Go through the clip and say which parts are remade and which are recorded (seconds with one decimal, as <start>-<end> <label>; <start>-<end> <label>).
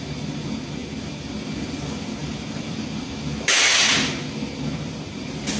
0.0-0.8 recorded; 0.8-1.5 remade; 1.5-2.2 recorded; 2.2-3.9 remade; 3.9-5.6 recorded